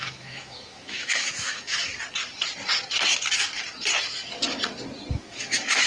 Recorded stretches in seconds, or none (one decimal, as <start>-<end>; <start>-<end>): 1.9-5.1